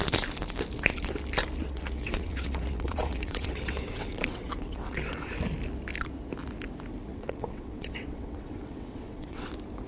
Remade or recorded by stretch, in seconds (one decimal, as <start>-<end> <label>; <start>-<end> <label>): 0.0-1.6 recorded; 1.6-5.3 remade; 5.3-7.1 recorded; 7.1-9.5 remade; 9.5-9.9 recorded